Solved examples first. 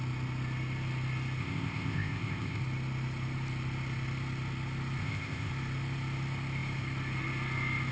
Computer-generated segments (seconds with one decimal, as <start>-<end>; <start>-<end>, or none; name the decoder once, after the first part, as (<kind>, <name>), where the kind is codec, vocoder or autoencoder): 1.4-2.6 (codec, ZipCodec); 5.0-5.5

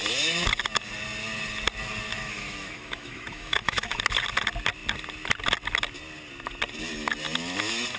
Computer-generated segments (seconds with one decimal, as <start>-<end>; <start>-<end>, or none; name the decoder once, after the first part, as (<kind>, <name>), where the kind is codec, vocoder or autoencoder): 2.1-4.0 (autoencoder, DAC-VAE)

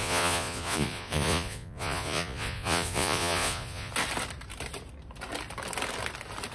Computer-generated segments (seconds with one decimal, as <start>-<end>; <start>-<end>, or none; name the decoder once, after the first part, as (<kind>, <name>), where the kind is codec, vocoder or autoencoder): 0.0-3.9 (vocoder, Vocos)

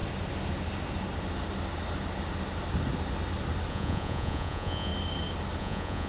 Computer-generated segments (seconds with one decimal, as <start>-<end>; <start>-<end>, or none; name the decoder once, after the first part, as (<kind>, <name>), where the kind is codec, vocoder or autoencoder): 3.7-4.9 (vocoder, Vocos); 5.6-6.1

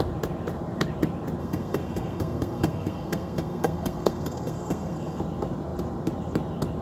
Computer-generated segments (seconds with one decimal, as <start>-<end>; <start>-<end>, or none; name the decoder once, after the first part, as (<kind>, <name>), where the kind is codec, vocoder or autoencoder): 1.4-5.2 (codec, SNAC)

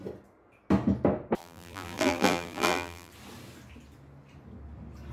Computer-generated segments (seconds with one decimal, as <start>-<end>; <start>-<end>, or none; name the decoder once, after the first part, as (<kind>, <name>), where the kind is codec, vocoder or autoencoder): 1.4-3.1 (vocoder, BigVGAN v2)